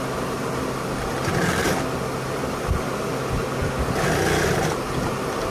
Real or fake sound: real